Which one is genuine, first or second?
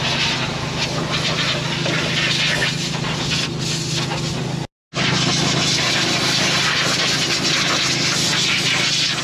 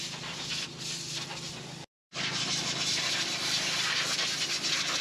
first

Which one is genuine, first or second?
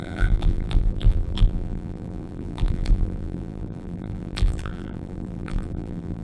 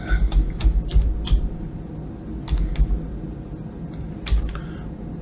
second